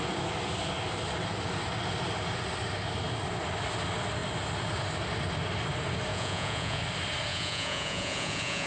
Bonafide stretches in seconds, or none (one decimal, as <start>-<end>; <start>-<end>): 0.0-6.1; 6.8-7.3